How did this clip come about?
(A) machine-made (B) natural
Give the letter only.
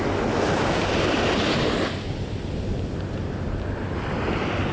B